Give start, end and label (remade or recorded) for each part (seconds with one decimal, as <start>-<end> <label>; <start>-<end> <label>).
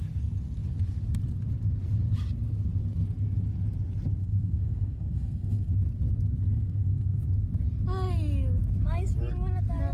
0.0-4.2 recorded; 4.2-5.7 remade; 5.7-6.5 recorded; 6.5-7.2 remade; 7.2-9.9 recorded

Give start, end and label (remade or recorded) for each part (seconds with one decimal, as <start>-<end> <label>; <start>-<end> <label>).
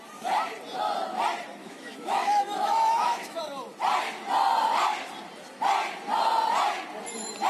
0.0-1.6 recorded; 1.6-3.4 remade; 3.4-7.5 recorded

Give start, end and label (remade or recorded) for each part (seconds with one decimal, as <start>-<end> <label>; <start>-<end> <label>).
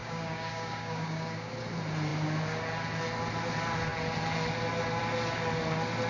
0.0-1.5 remade; 1.5-6.1 recorded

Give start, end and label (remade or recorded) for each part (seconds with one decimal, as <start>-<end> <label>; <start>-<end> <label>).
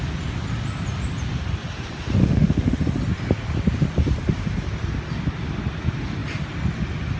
0.0-2.2 recorded; 2.2-2.8 remade; 2.8-7.2 recorded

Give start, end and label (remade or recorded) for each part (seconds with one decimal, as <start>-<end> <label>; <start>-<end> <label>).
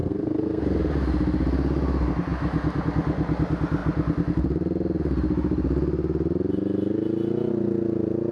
0.0-0.6 remade; 0.6-8.3 recorded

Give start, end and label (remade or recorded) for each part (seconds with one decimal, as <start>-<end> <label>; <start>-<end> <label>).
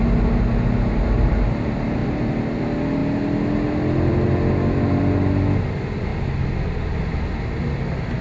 0.0-8.2 recorded